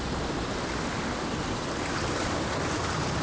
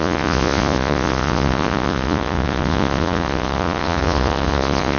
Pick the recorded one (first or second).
first